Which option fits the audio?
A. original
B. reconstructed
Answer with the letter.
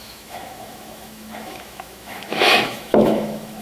B